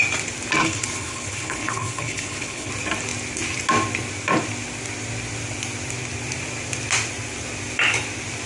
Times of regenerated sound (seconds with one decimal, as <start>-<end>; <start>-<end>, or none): 0.6-2.7